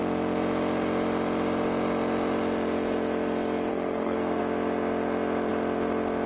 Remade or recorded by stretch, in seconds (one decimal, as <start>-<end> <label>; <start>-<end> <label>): 0.0-3.7 recorded; 3.7-4.4 remade; 4.4-6.3 recorded